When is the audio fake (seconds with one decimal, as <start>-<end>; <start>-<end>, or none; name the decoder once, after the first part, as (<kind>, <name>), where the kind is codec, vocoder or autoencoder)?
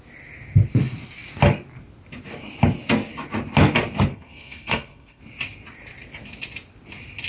4.1-5.2 (codec, SNAC)